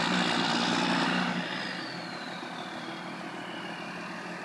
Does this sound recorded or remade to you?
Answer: recorded